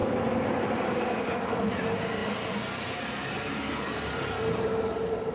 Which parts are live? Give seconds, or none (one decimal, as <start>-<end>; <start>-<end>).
0.0-5.3